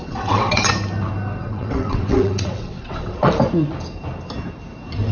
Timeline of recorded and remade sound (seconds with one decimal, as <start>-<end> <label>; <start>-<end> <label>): 0.0-0.7 remade; 0.7-1.4 recorded; 1.4-3.3 remade; 3.3-5.1 recorded